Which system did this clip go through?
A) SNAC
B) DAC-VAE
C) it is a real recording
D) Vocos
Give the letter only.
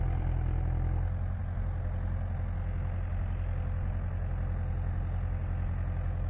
C